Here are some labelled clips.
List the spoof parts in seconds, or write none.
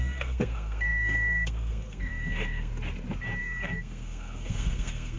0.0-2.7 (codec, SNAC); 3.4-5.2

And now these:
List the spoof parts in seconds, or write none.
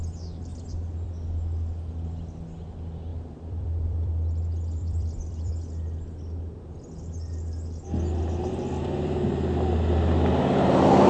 0.5-1.1 (vocoder, BigVGAN v2); 3.1-4.1; 4.8-5.5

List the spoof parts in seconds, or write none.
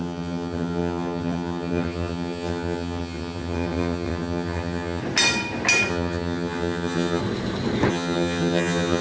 0.0-5.0 (vocoder, HiFi-GAN); 5.9-7.2; 7.9-9.0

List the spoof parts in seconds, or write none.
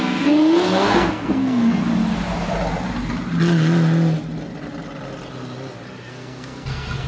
0.0-1.8 (codec, SNAC); 6.1-7.1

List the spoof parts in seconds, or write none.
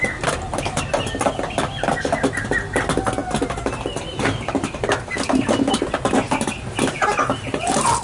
none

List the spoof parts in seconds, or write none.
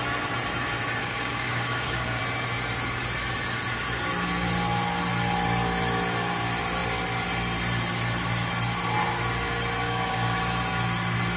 1.0-2.2 (codec, DAC); 9.8-10.4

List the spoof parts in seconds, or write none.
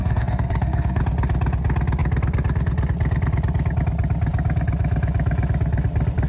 0.0-1.0 (codec, SNAC)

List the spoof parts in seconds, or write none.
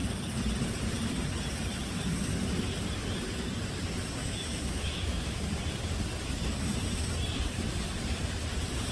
4.2-5.4 (autoencoder, DAC-VAE)